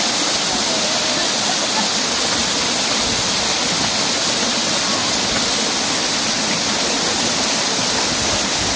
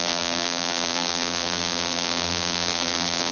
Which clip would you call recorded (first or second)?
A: first